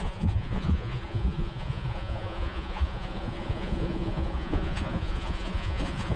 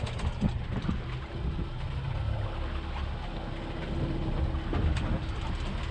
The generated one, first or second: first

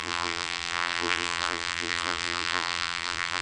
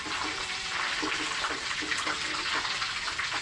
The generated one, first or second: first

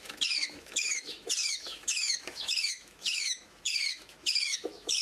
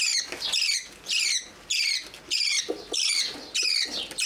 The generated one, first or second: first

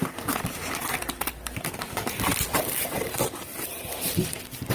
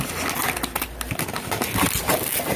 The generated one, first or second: first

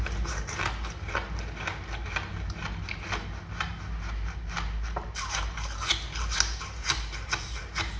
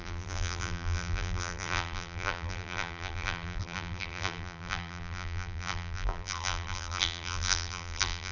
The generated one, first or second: second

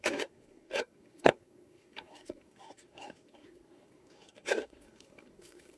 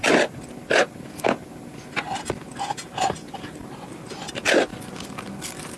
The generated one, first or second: first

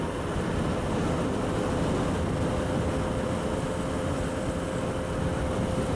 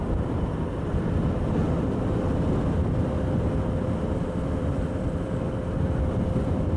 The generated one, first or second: second